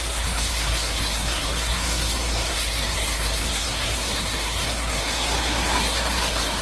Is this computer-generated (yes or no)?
yes